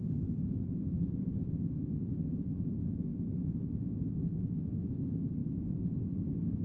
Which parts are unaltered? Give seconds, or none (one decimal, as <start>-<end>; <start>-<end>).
3.1-3.7; 5.4-6.6